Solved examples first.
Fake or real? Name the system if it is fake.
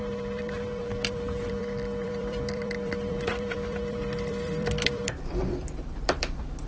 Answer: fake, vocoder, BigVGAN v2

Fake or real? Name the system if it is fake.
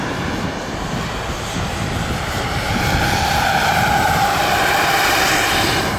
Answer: fake, vocoder, BigVGAN v2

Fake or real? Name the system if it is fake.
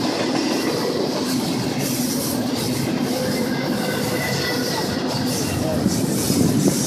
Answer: real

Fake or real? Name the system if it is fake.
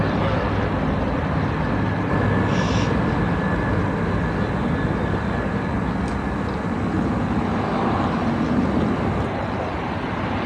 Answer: real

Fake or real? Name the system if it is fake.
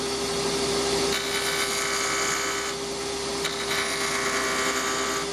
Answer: real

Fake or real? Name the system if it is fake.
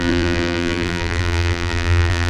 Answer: fake, vocoder, BigVGAN v2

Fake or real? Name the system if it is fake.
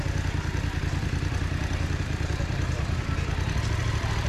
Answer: fake, vocoder, BigVGAN v2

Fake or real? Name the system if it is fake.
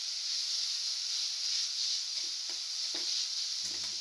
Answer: real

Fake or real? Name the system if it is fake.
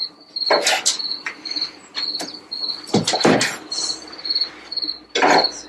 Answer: real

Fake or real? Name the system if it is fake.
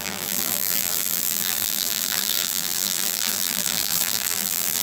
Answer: fake, vocoder, BigVGAN v2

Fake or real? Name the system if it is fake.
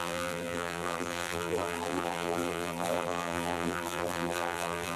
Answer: fake, vocoder, BigVGAN v2